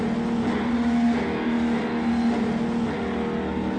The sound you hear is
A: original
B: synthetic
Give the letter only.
A